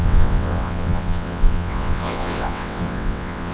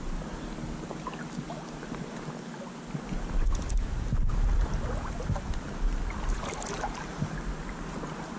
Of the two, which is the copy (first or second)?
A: first